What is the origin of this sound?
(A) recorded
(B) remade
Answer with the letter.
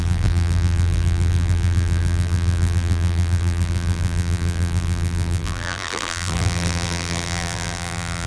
B